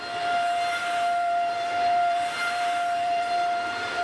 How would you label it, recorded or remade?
remade